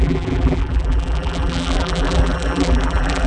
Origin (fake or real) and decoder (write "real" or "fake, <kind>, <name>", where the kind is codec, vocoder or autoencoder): fake, vocoder, BigVGAN v2